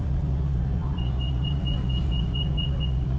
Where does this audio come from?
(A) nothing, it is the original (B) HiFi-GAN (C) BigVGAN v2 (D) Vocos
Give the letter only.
D